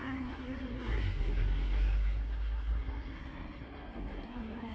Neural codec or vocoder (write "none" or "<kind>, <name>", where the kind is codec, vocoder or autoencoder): codec, SNAC